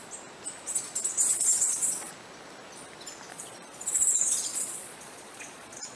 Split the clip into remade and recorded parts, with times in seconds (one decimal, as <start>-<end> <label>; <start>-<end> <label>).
0.0-1.2 recorded; 1.2-2.1 remade; 2.1-3.3 recorded; 3.3-6.0 remade